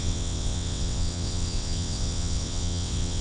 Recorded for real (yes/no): no